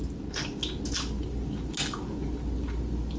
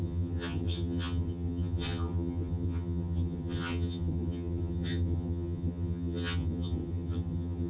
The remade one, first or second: second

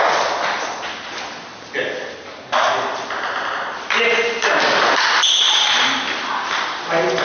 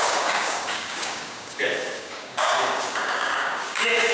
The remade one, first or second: second